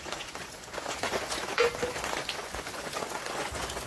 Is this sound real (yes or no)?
no